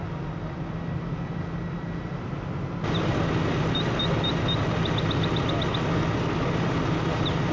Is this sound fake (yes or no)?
no